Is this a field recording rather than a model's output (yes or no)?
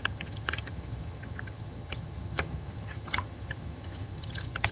no